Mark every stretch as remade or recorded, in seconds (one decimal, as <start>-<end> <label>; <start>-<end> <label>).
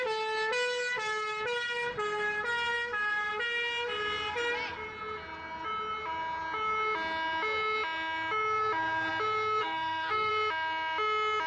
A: 0.0-9.6 recorded; 9.6-10.3 remade; 10.3-11.5 recorded